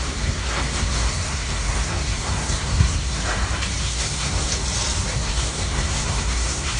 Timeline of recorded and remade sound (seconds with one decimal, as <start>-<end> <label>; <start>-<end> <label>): 0.0-3.2 remade; 3.2-3.8 recorded; 3.8-4.5 remade; 4.5-5.1 recorded; 5.1-6.8 remade